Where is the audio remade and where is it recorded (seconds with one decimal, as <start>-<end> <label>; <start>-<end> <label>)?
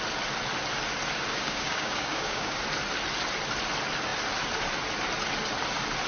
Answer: 0.0-1.3 recorded; 1.3-2.6 remade; 2.6-6.1 recorded